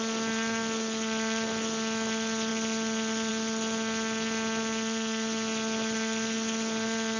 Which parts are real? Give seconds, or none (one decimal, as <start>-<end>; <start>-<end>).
0.0-7.2